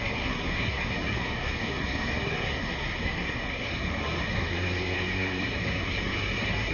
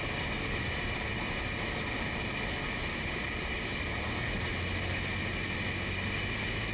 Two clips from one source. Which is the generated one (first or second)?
first